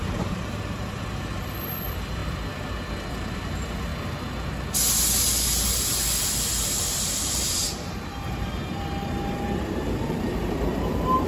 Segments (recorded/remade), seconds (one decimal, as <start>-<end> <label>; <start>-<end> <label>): 0.0-2.2 remade; 2.2-3.1 recorded; 3.1-3.9 remade; 3.9-7.2 recorded; 7.2-8.6 remade; 8.6-9.1 recorded; 9.1-11.3 remade